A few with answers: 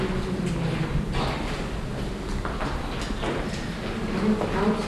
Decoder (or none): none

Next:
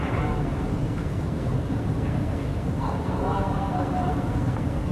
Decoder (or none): codec, SNAC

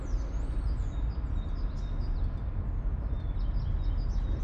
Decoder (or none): none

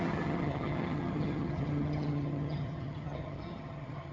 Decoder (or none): vocoder, HiFi-GAN